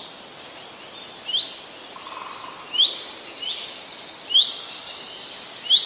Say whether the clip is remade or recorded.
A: recorded